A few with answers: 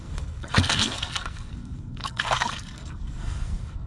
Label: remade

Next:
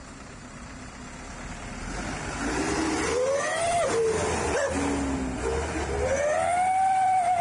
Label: recorded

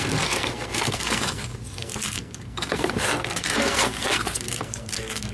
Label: remade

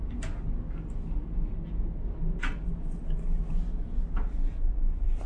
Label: recorded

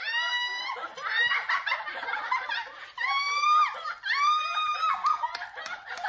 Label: recorded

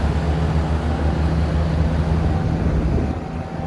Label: recorded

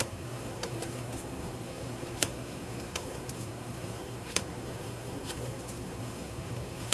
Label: remade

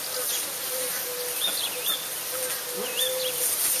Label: recorded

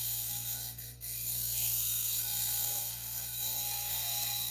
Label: remade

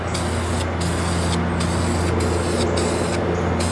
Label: recorded